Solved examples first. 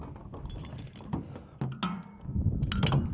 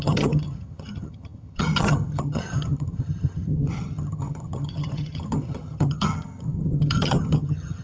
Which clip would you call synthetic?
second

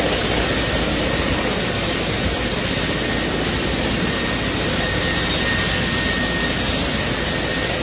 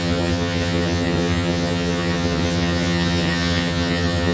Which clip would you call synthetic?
second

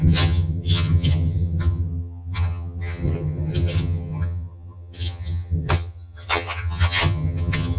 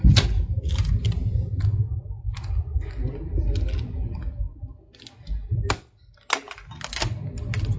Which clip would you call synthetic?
first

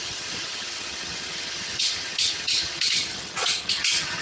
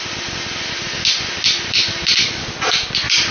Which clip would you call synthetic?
first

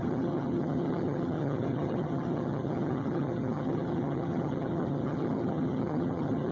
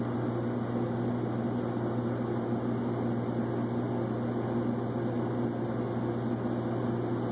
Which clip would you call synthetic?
first